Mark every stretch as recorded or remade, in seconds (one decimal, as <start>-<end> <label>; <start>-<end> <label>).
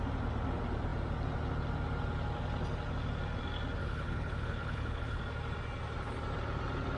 0.0-3.8 recorded; 3.8-5.2 remade; 5.2-7.0 recorded